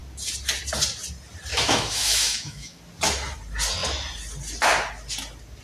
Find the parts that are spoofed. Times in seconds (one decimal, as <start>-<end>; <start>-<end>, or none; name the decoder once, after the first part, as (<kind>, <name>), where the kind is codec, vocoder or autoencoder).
1.5-2.8 (autoencoder, DAC-VAE)